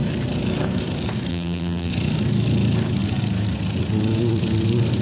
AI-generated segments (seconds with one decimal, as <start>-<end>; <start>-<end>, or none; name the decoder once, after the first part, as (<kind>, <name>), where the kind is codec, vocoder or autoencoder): 1.3-1.9 (vocoder, BigVGAN v2)